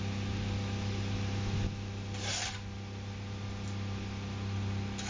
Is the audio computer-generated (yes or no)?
no